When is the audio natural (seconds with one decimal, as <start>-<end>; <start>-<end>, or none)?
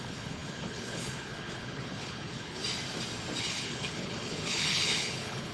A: 2.6-3.4